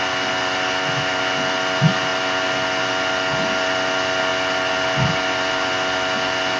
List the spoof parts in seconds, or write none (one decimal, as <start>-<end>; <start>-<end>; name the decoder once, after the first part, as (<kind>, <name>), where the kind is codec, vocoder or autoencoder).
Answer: none